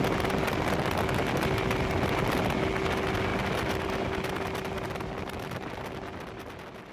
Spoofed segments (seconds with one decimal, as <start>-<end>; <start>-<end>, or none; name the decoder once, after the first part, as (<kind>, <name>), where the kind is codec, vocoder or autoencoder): none